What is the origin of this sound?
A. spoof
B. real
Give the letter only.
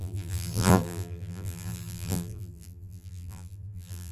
A